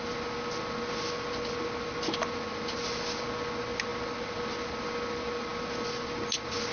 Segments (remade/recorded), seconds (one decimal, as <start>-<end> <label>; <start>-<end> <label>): 0.0-6.7 recorded